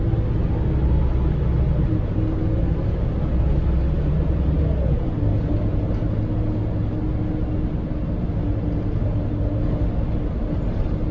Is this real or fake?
real